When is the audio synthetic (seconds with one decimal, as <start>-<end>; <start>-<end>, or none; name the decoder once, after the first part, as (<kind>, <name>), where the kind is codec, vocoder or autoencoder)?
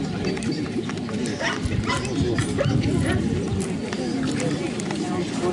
3.8-5.5 (vocoder, BigVGAN v2)